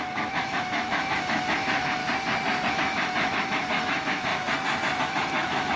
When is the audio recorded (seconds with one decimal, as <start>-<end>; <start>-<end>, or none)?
2.0-2.7; 4.3-5.0